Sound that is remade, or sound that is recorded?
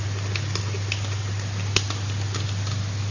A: recorded